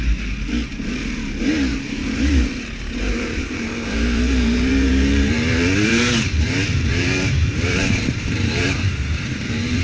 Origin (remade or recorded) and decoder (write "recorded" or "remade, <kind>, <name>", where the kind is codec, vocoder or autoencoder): remade, vocoder, BigVGAN v2